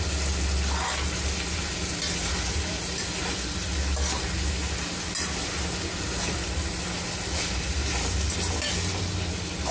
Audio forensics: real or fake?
real